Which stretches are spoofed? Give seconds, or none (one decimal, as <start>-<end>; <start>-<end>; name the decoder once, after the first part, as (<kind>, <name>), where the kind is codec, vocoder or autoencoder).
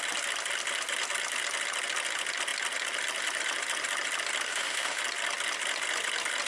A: 4.5-5.0 (autoencoder, DAC-VAE)